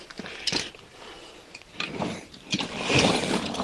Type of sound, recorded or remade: recorded